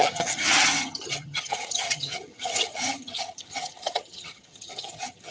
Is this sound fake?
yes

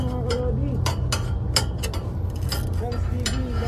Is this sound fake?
no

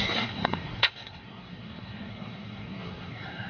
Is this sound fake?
yes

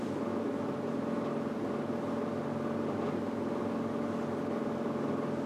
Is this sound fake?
no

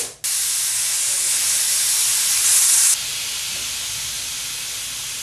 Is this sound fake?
no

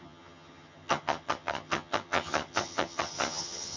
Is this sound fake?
yes